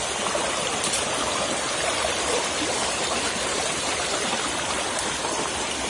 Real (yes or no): no